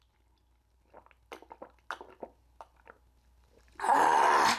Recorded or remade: recorded